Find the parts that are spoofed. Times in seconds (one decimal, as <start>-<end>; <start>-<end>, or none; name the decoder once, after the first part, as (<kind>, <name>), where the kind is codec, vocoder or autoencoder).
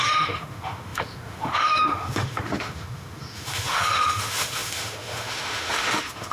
0.0-6.3 (autoencoder, DAC-VAE)